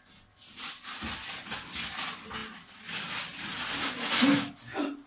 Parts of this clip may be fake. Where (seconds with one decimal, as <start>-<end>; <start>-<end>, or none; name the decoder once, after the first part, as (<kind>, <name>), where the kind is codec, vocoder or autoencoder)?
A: none